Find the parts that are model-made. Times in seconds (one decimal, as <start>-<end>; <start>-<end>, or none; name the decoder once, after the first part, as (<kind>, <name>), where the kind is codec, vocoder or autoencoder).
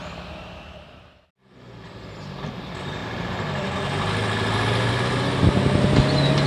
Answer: none